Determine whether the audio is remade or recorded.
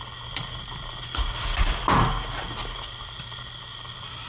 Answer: recorded